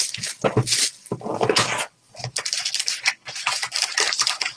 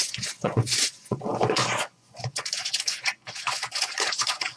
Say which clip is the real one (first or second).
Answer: first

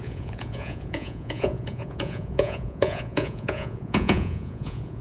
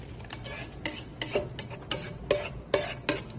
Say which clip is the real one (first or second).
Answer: second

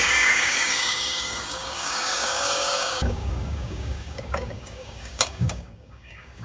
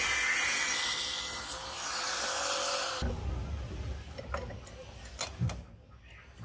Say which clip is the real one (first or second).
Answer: second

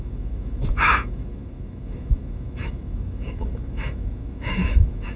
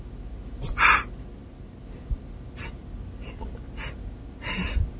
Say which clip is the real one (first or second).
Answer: second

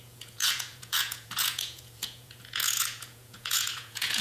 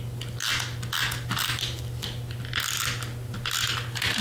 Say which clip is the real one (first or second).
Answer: second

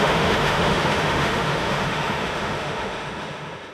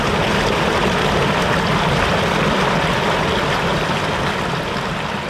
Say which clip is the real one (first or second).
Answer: second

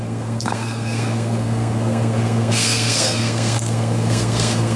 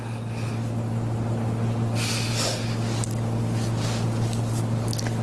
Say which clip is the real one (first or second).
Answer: second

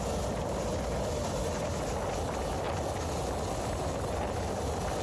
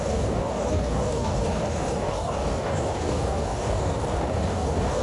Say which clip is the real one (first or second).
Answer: first